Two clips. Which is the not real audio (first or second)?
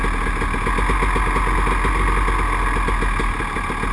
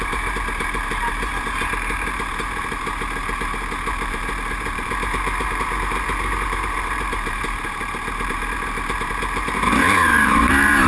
second